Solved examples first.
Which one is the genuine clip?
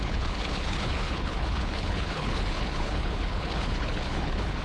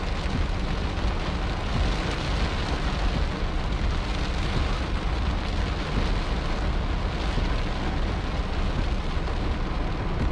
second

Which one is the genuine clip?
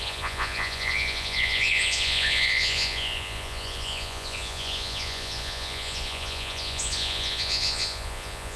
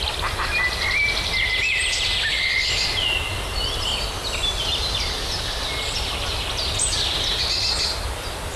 second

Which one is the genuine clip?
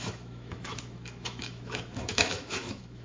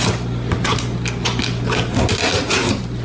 second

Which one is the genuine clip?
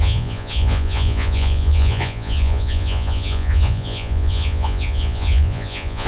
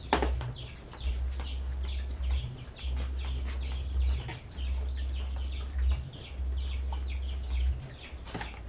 second